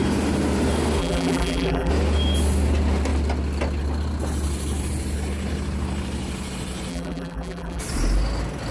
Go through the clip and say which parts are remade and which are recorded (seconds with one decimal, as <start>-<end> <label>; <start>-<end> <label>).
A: 0.0-1.0 recorded; 1.0-1.9 remade; 1.9-6.9 recorded; 6.9-7.8 remade; 7.8-8.7 recorded